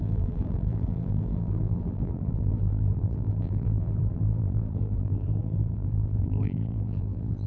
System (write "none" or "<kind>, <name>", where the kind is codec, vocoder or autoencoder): vocoder, BigVGAN v2